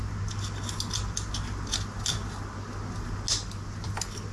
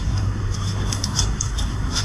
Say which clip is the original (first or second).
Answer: first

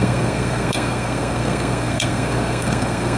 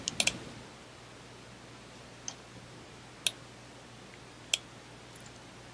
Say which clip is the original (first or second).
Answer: second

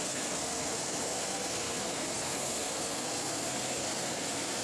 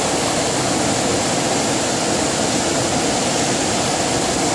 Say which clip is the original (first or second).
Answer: second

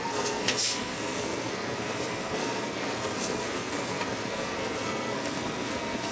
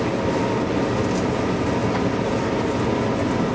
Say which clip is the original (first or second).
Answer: second